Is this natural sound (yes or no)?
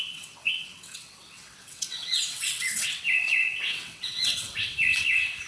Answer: no